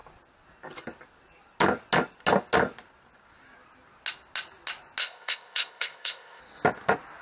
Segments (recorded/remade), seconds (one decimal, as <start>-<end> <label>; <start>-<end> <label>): 0.0-5.0 recorded; 5.0-6.4 remade; 6.4-7.2 recorded